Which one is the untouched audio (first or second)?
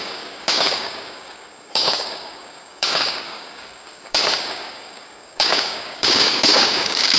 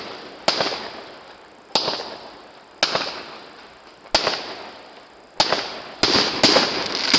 second